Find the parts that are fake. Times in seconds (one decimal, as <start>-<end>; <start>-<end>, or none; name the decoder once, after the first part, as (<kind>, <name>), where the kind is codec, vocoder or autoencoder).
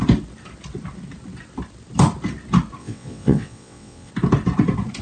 2.8-4.1 (vocoder, WaveNeXt)